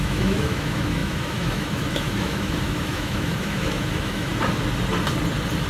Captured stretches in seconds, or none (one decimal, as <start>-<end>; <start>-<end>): 4.3-5.7